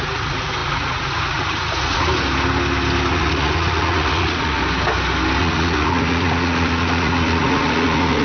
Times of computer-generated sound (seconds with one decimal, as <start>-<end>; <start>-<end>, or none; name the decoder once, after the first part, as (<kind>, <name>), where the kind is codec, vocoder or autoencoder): 0.0-2.1 (vocoder, Vocos); 3.1-4.6; 5.4-8.2